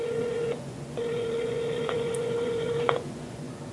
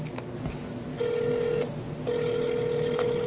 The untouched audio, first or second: second